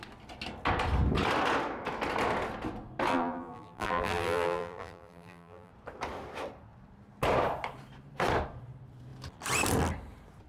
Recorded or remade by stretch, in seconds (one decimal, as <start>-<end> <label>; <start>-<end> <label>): 0.0-3.1 recorded; 3.1-5.7 remade; 5.7-10.5 recorded